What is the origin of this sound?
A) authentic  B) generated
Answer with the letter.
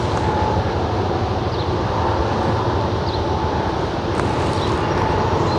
B